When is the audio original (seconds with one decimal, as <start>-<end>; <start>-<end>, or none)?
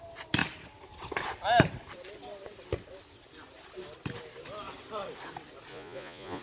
0.0-5.7